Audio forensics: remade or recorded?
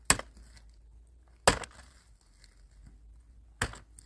recorded